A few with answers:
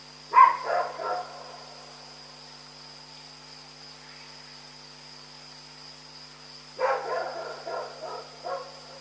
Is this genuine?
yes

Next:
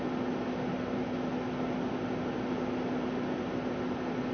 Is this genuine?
yes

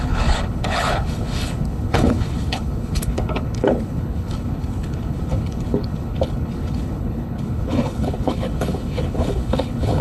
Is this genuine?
no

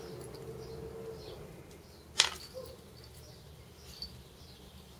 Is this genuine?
yes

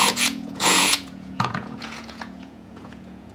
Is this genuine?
no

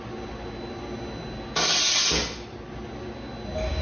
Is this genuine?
yes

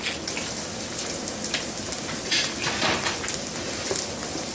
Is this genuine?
yes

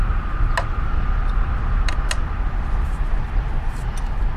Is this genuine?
yes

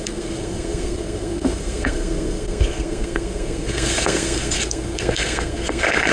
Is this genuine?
no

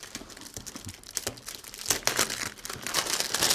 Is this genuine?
yes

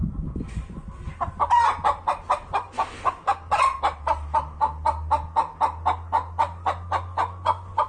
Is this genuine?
yes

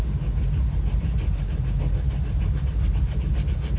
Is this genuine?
yes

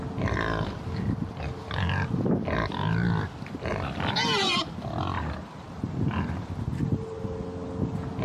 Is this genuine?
yes